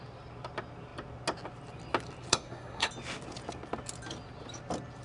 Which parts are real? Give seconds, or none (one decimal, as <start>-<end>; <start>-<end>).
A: 0.0-2.3; 2.9-5.0